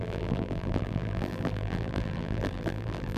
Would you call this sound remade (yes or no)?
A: yes